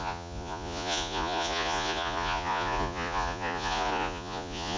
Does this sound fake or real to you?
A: fake